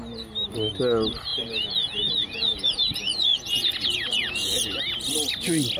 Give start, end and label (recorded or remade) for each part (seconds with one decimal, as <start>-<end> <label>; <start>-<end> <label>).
0.0-1.3 recorded; 1.3-4.8 remade; 4.8-5.8 recorded